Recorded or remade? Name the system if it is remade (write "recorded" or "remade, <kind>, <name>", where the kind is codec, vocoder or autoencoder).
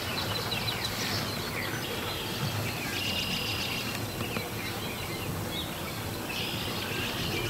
recorded